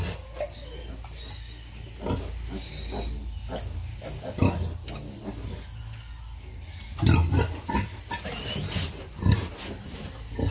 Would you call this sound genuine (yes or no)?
yes